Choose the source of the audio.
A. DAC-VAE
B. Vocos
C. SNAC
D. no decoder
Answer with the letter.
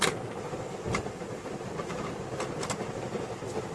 D